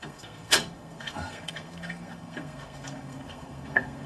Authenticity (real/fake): fake